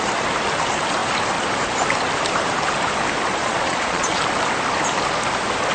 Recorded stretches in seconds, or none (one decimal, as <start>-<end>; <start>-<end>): 0.0-3.4; 4.2-5.7